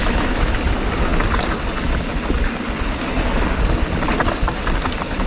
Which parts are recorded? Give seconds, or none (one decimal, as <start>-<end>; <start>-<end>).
0.5-5.3

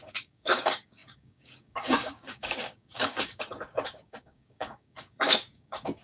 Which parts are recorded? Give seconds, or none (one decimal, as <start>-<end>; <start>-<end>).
none

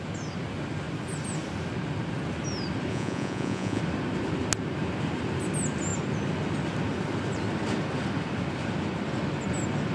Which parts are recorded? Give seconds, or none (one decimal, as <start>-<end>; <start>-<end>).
0.0-2.9; 3.8-9.9

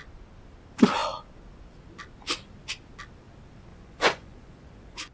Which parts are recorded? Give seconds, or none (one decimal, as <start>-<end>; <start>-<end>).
0.0-3.7

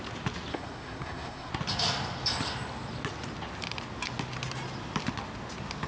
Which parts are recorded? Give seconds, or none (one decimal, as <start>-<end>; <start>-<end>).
0.0-0.5; 1.5-5.9